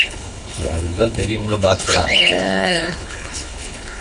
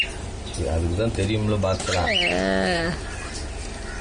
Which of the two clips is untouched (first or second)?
second